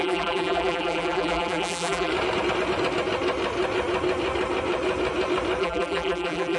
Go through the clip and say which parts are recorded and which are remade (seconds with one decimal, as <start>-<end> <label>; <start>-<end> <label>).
0.0-2.1 remade; 2.1-5.6 recorded; 5.6-6.6 remade